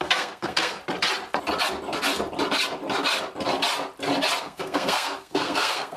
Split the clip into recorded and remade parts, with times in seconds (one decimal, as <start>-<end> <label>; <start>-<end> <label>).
0.0-0.8 remade; 0.8-4.4 recorded; 4.4-6.0 remade